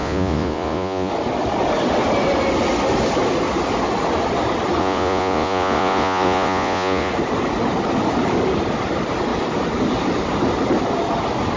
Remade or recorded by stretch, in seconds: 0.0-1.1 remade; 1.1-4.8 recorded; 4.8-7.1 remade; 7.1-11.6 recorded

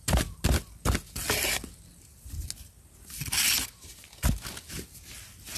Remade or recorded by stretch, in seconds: 0.0-5.6 recorded

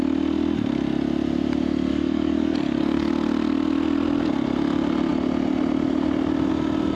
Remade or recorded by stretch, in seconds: 0.0-1.9 recorded; 1.9-3.1 remade; 3.1-7.0 recorded

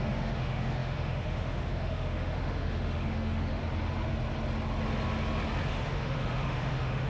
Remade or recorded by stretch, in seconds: 0.0-3.6 remade; 3.6-5.7 recorded; 5.7-7.1 remade

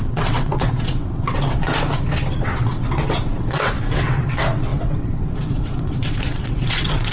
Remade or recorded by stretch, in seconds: 0.0-1.7 remade; 1.7-2.4 recorded; 2.4-7.1 remade

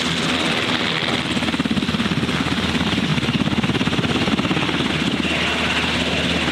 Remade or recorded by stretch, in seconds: 0.0-6.5 recorded